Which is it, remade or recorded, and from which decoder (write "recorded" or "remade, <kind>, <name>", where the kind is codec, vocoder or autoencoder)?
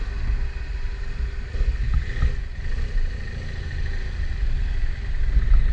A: recorded